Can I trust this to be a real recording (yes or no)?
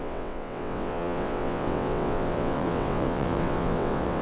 no